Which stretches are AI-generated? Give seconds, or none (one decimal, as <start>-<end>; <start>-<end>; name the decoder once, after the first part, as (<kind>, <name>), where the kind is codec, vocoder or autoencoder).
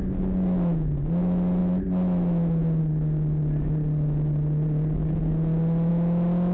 none